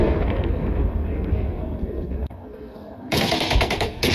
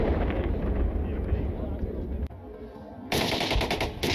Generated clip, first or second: first